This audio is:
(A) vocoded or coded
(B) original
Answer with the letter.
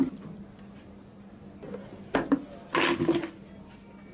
B